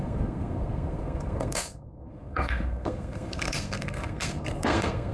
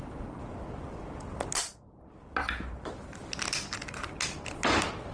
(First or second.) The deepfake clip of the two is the first